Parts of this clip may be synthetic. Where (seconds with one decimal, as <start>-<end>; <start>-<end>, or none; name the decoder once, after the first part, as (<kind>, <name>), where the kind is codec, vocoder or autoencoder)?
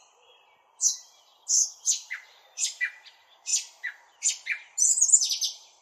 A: 0.0-1.3 (vocoder, BigVGAN v2); 1.9-3.5; 5.3-5.8